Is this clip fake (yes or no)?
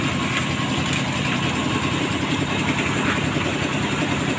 no